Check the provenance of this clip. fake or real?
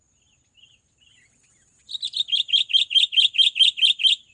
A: real